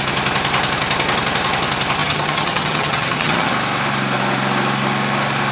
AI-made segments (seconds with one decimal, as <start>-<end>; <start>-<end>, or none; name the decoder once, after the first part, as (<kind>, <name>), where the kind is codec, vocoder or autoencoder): 2.0-3.5 (vocoder, HiFi-GAN)